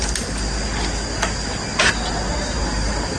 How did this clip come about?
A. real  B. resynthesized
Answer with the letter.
A